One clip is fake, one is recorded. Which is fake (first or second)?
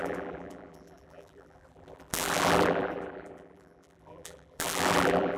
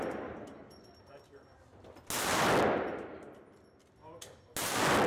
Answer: first